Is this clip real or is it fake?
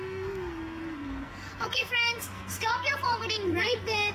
fake